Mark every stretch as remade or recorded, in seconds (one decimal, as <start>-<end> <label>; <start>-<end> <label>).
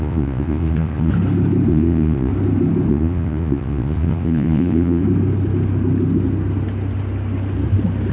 0.0-1.1 remade; 1.1-1.7 recorded; 1.7-2.3 remade; 2.3-2.9 recorded; 2.9-5.0 remade; 5.0-8.1 recorded